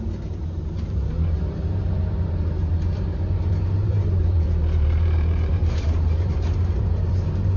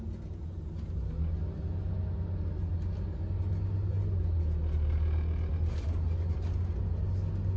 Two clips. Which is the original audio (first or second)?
second